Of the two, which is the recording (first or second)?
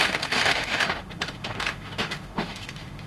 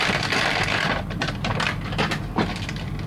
second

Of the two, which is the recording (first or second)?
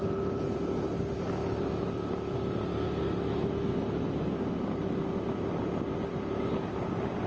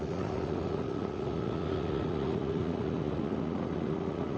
first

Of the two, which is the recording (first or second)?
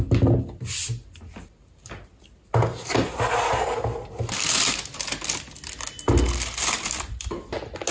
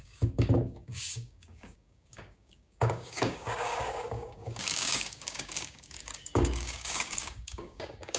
first